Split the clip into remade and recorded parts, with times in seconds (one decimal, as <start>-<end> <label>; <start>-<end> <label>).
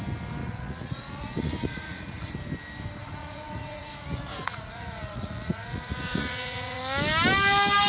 0.0-0.4 recorded; 0.4-2.3 remade; 2.3-3.0 recorded; 3.0-6.8 remade; 6.8-7.9 recorded